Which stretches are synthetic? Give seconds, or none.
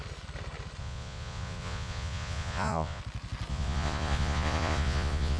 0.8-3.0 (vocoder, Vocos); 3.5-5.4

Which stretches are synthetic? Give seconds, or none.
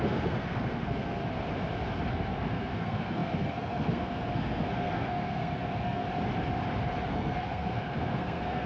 0.0-1.2 (codec, SNAC); 2.1-6.0; 7.1-8.7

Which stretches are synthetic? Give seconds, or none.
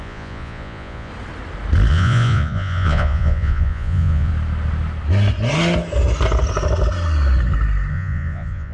0.0-1.1 (vocoder, Vocos); 1.9-4.3; 7.9-8.7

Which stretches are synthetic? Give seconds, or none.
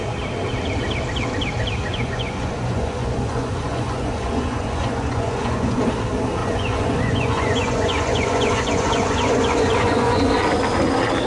1.9-5.8 (vocoder, Vocos); 6.4-10.3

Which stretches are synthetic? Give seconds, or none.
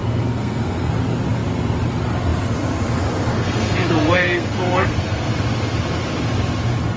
0.0-0.9 (codec, SNAC); 3.3-5.3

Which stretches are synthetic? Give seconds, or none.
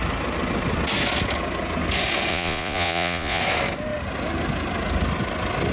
2.3-3.4 (vocoder, Vocos)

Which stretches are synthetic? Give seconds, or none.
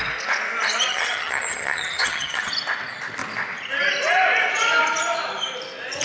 0.9-2.5 (vocoder, HiFi-GAN)